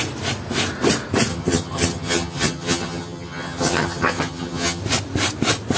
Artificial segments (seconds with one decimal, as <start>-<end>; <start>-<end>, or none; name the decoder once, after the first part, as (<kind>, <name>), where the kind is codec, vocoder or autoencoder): 1.3-4.8 (vocoder, HiFi-GAN)